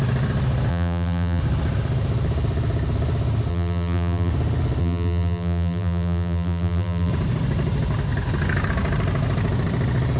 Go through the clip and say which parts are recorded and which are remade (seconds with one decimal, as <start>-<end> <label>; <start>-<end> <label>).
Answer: 0.0-0.7 recorded; 0.7-1.4 remade; 1.4-3.5 recorded; 3.5-4.3 remade; 4.3-4.8 recorded; 4.8-7.1 remade; 7.1-10.2 recorded